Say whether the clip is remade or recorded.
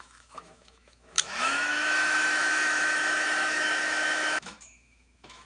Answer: remade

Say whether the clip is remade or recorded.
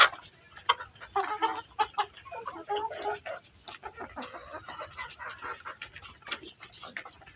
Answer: recorded